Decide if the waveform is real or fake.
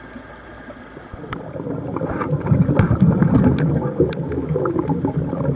real